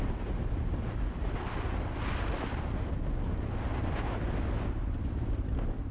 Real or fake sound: real